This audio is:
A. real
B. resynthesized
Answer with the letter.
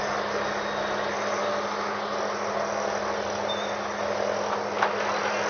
A